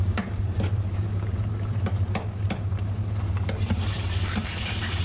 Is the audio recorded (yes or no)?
no